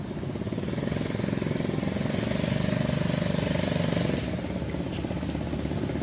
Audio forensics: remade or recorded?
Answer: recorded